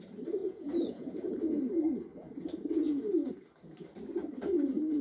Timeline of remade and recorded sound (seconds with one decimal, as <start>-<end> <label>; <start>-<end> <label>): 0.0-0.4 recorded; 0.4-1.3 remade; 1.3-5.0 recorded